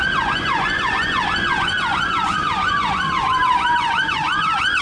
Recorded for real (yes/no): no